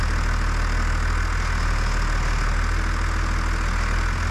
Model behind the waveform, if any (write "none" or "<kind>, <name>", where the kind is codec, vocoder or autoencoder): none